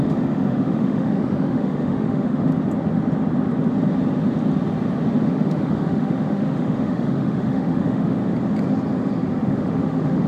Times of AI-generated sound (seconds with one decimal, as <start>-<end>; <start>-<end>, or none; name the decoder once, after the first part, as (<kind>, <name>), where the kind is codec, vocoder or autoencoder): 0.0-2.5 (autoencoder, DAC-VAE); 5.2-8.2; 9.4-10.3